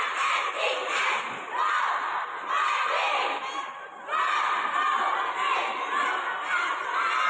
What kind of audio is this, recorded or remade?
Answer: recorded